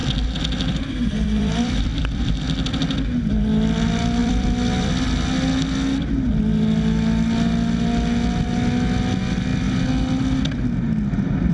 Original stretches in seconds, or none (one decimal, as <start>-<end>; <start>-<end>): 2.2-4.2; 4.9-11.5